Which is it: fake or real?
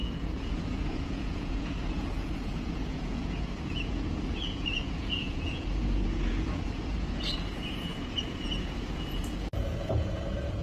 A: fake